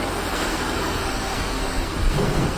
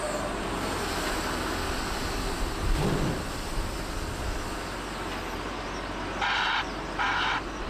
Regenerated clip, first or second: first